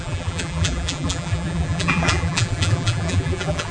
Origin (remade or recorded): remade